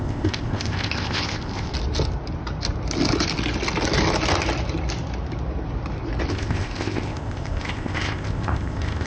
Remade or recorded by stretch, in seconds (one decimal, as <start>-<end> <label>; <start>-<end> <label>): 0.0-1.7 remade; 1.7-6.3 recorded; 6.3-9.1 remade